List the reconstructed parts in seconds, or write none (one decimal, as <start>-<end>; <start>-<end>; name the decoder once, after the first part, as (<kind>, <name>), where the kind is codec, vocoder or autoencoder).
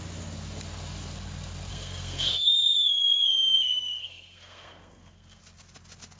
1.7-5.4 (codec, SNAC)